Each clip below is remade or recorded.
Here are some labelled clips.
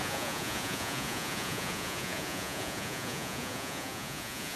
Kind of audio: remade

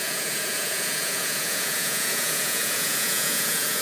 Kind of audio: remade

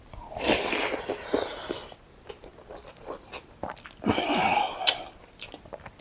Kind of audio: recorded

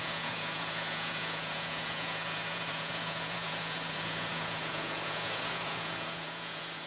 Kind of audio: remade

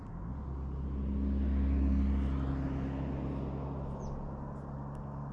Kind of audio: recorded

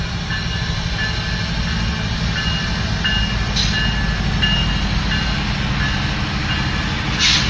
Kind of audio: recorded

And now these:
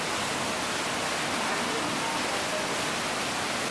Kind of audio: recorded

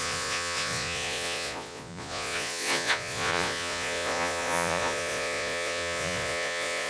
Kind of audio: remade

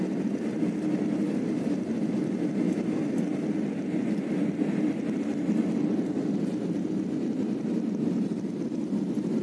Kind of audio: recorded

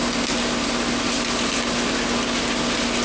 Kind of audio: recorded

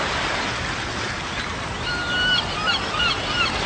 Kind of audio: recorded